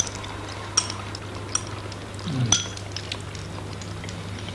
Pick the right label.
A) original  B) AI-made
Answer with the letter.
A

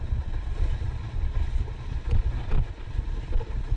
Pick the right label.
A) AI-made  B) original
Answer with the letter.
A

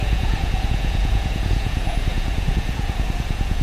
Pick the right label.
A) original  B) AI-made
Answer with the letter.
B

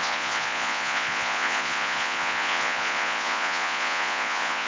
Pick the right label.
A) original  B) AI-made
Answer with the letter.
B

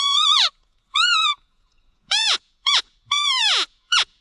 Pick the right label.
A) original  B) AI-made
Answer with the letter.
B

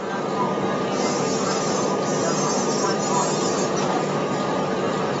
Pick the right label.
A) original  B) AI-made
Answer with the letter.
A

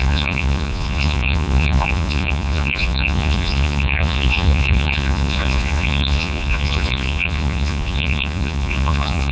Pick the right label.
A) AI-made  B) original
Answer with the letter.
A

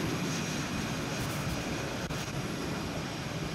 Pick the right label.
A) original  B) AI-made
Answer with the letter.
A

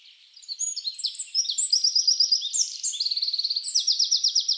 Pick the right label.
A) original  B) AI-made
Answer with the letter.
A